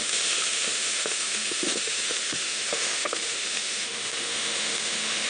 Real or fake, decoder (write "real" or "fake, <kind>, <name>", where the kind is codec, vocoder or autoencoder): fake, autoencoder, DAC-VAE